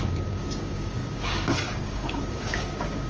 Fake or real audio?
fake